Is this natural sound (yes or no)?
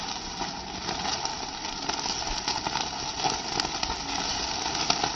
yes